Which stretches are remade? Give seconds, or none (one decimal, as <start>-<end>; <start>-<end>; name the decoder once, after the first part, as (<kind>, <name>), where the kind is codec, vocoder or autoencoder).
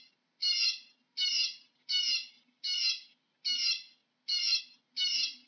none